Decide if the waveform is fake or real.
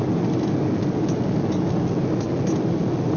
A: real